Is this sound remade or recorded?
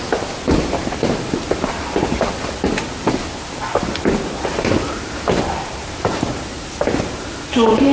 recorded